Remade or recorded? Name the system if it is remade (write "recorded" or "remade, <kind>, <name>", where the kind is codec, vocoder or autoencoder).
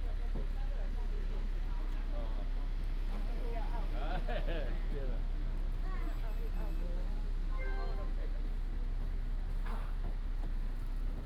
recorded